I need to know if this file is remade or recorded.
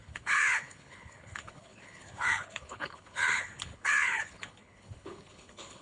remade